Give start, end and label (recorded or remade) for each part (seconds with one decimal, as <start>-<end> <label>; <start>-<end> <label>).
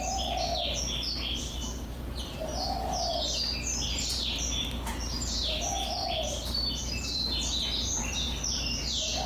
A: 0.0-0.5 remade; 0.5-1.4 recorded; 1.4-2.5 remade; 2.5-3.9 recorded; 3.9-9.3 remade